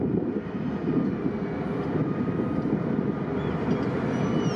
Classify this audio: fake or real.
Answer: real